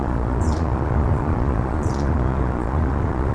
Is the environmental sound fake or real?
fake